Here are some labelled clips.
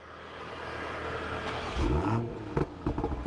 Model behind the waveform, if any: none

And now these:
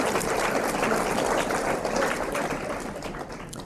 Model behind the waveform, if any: none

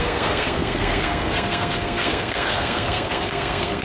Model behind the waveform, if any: codec, SNAC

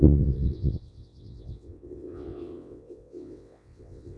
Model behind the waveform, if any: vocoder, WaveNeXt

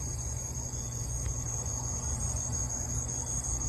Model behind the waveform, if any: vocoder, Vocos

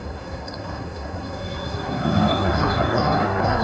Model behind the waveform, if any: codec, SNAC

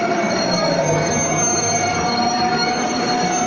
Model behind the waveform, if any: codec, DAC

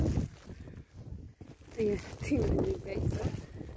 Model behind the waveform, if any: none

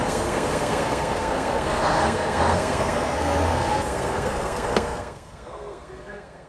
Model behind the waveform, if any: codec, SNAC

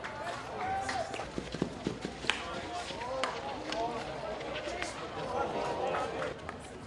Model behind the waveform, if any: none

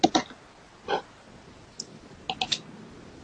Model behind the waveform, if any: none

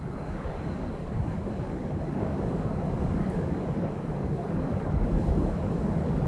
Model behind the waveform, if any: codec, DAC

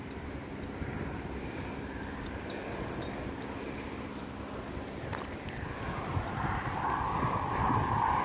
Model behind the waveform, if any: none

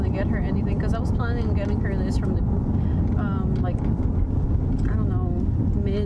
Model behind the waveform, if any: none